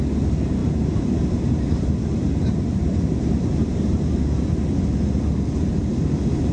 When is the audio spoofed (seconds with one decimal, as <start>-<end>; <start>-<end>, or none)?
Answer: 0.6-4.5